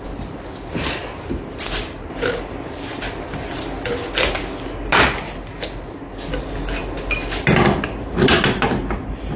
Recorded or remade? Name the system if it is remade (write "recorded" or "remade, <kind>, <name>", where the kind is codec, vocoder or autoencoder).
recorded